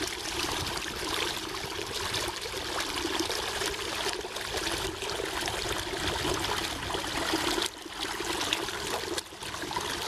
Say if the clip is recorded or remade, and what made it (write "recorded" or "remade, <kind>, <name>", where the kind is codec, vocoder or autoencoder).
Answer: recorded